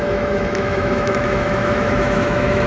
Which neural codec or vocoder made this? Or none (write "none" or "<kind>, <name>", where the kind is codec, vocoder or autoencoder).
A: autoencoder, DAC-VAE